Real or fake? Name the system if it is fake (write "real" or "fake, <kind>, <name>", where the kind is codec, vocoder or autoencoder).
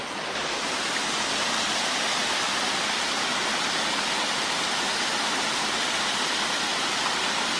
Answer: real